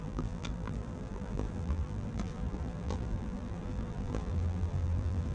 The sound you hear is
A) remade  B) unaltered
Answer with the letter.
A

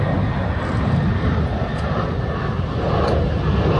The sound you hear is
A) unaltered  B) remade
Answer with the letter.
A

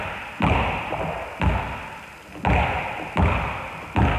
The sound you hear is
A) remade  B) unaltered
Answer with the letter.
B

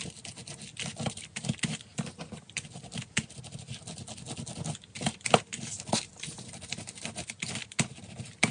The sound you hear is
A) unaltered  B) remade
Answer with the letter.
A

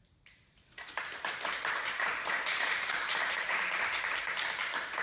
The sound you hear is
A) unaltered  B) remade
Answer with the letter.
B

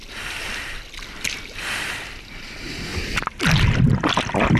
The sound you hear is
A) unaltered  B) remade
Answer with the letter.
A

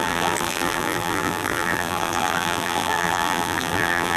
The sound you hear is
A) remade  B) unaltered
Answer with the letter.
A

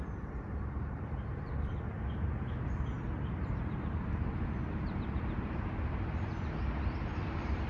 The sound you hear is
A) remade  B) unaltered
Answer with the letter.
A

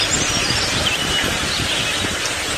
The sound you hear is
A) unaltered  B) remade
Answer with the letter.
B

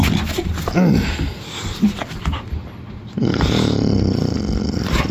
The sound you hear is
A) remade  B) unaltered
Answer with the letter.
B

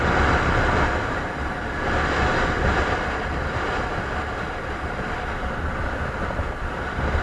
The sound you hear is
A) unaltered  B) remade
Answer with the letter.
A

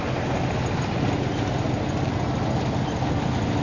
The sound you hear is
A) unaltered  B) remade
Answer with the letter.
A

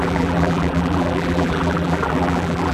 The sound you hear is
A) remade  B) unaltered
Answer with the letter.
A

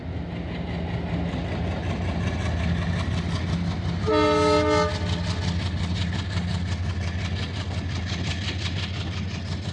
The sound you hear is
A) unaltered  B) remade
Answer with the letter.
A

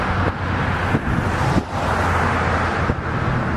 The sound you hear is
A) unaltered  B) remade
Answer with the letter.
A